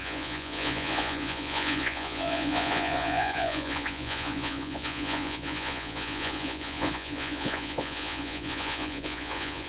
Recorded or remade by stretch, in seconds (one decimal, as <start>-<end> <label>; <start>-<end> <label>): 0.0-9.7 remade